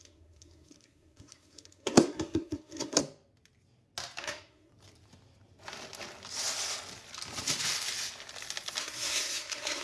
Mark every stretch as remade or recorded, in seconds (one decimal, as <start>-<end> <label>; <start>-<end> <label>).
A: 0.0-3.0 remade; 3.0-4.2 recorded; 4.2-4.7 remade; 4.7-8.8 recorded; 8.8-9.8 remade